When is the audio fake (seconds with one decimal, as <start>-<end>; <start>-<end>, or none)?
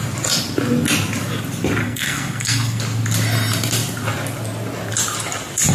1.8-2.8